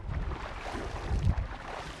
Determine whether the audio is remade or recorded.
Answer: recorded